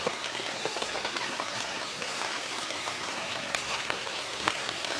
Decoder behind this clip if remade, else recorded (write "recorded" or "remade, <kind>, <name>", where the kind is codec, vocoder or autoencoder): remade, codec, SNAC